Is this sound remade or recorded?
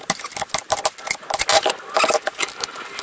recorded